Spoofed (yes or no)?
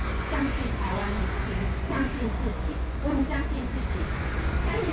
yes